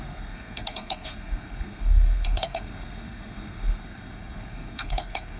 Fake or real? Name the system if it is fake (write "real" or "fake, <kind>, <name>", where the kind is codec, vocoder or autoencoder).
fake, codec, SNAC